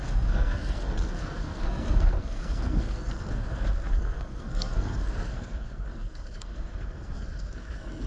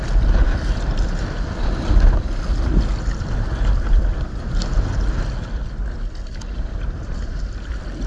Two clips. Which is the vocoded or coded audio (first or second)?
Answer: first